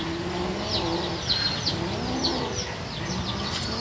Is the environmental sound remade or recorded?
recorded